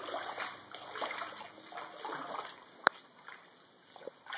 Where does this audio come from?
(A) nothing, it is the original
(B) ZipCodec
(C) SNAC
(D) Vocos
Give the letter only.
A